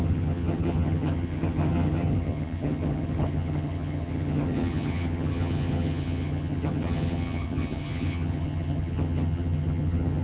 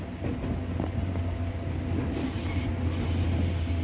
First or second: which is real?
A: second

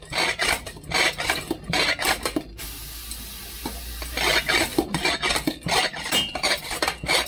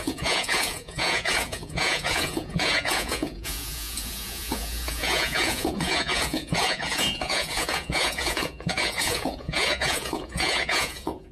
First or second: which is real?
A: first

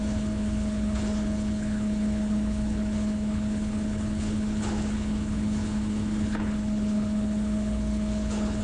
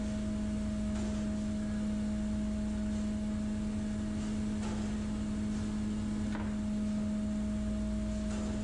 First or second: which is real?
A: second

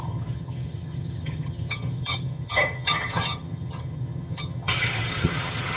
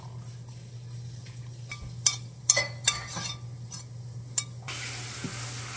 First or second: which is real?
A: second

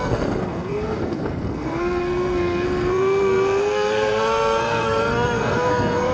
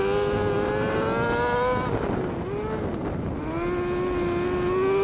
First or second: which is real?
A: second